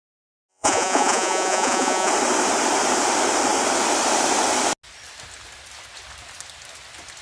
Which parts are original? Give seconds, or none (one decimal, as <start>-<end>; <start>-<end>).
0.0-0.5; 2.1-7.2